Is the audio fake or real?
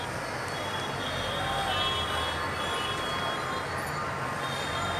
real